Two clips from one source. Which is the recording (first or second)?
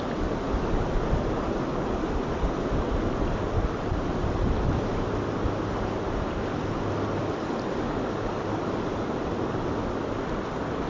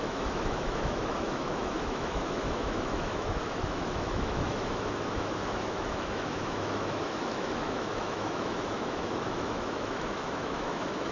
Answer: first